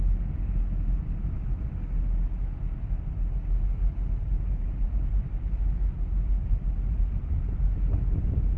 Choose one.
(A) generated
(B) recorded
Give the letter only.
B